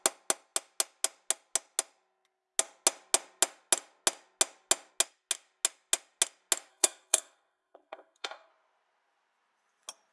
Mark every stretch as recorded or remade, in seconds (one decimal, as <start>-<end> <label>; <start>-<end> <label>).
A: 0.0-6.7 recorded; 6.7-8.5 remade; 8.5-10.1 recorded